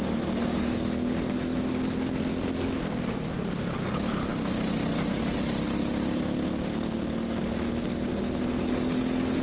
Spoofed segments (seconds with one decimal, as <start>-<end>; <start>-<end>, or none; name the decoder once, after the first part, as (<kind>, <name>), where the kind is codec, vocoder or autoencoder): none